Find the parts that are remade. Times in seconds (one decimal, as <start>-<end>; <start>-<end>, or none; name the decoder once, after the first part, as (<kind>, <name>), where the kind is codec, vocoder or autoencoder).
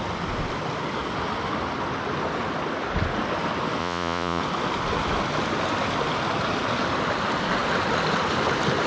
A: 3.8-4.4 (vocoder, Vocos)